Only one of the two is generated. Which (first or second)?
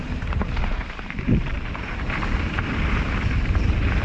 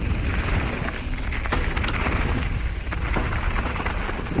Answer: first